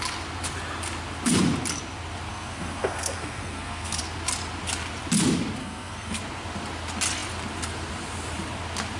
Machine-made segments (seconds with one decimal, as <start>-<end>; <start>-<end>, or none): 2.3-4.0; 5.6-6.2